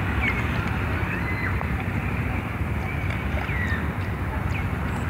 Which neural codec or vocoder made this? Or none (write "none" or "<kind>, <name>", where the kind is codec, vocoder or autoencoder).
none